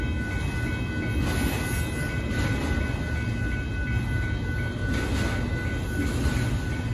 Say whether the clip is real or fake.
real